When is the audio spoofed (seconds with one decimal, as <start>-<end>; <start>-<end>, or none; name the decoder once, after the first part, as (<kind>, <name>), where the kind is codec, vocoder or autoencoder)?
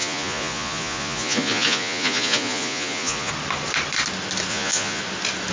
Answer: 0.0-3.3 (vocoder, Vocos); 4.5-5.0